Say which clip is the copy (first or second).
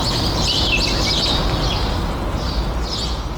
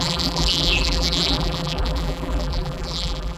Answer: second